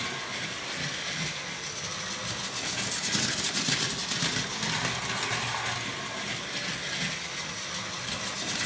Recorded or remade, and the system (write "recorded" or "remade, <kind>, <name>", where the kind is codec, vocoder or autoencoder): recorded